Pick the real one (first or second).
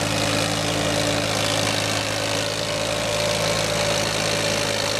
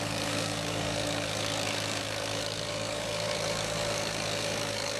first